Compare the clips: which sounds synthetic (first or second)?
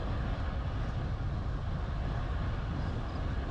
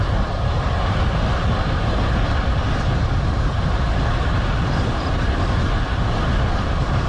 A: second